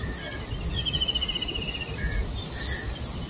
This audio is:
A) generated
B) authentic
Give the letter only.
B